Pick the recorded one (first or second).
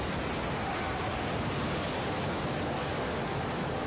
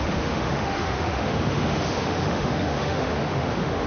first